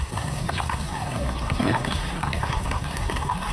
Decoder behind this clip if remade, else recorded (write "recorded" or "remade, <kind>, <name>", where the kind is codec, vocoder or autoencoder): remade, codec, SNAC